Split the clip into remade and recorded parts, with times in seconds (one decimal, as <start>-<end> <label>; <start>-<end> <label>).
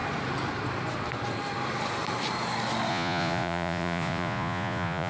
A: 0.0-2.9 recorded; 2.9-5.1 remade